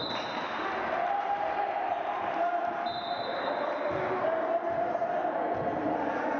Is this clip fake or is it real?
real